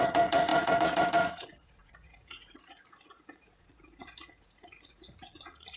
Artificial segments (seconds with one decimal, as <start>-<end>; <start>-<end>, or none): 0.0-5.8